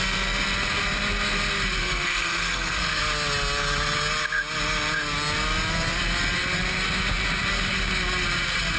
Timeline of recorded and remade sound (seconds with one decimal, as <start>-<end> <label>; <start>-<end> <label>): 0.0-1.8 recorded; 1.8-3.0 remade; 3.0-8.8 recorded